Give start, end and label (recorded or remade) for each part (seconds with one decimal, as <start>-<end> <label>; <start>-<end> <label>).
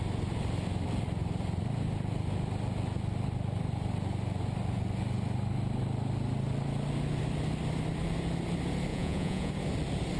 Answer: 0.0-8.9 recorded; 8.9-9.5 remade; 9.5-10.2 recorded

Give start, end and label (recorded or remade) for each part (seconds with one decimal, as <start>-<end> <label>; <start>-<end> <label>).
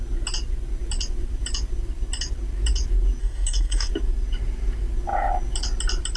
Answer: 0.0-3.2 recorded; 3.2-3.9 remade; 3.9-6.2 recorded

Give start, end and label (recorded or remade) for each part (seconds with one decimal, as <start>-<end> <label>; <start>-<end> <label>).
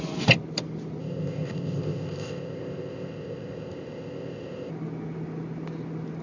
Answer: 0.0-1.0 recorded; 1.0-4.7 remade; 4.7-6.2 recorded